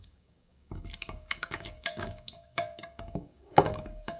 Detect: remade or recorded remade